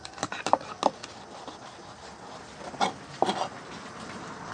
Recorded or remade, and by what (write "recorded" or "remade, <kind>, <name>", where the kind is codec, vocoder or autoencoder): recorded